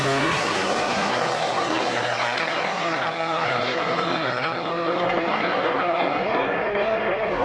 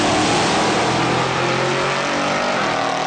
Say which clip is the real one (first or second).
second